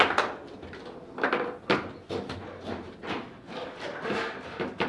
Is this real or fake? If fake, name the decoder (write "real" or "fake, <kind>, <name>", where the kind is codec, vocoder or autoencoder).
real